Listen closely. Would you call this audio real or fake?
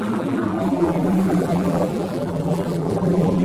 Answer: fake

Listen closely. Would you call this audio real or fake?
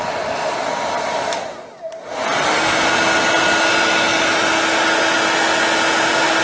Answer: real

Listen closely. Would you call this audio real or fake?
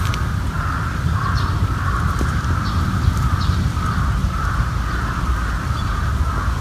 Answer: real